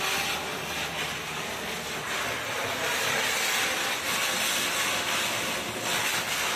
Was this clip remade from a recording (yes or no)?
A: no